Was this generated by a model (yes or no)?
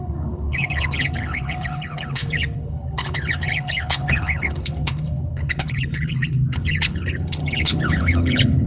yes